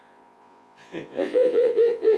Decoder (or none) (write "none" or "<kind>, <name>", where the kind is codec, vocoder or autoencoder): vocoder, Vocos